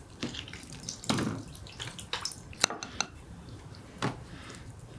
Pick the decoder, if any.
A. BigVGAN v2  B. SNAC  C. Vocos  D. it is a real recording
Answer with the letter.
D